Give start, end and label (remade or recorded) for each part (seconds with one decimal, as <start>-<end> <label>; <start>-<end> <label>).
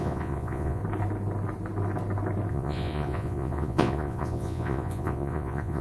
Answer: 0.0-0.8 remade; 0.8-2.5 recorded; 2.5-5.8 remade